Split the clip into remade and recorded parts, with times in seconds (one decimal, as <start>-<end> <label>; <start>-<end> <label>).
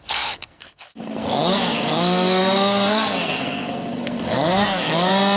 0.0-5.4 remade